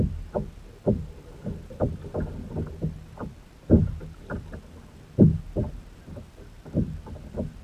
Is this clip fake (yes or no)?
no